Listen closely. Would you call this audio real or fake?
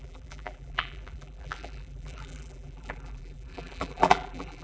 fake